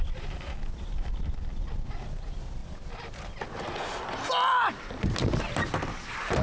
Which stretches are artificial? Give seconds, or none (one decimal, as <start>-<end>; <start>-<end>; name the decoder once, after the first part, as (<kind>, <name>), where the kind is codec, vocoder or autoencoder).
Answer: 0.0-2.6 (vocoder, BigVGAN v2); 5.4-6.4